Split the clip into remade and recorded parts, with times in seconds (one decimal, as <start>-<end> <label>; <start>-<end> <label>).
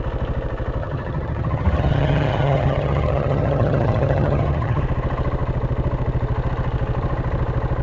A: 0.0-0.8 recorded; 0.8-4.8 remade; 4.8-7.8 recorded